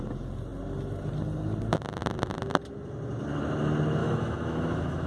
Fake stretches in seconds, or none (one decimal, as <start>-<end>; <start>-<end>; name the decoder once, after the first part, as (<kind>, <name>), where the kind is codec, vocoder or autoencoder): 4.0-5.1 (autoencoder, DAC-VAE)